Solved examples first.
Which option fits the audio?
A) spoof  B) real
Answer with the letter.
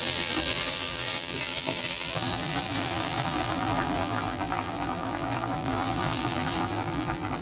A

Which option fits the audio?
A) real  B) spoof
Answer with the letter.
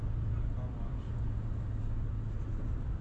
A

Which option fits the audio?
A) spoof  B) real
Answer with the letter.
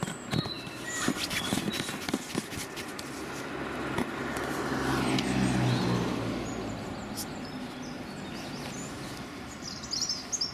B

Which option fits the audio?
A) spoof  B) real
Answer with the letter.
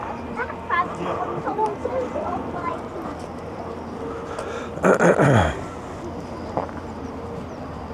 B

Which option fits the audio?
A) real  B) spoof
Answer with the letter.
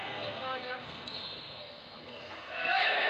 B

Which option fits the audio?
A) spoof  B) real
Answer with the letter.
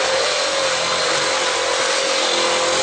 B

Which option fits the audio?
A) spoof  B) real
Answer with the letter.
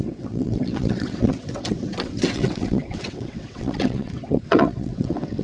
A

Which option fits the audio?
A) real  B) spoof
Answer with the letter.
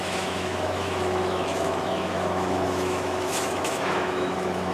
B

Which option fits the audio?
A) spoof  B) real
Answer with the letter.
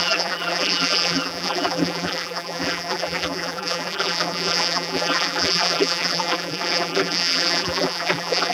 A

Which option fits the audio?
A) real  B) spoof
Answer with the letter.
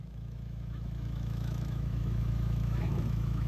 B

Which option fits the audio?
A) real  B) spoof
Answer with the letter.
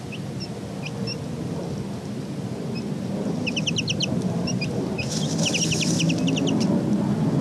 A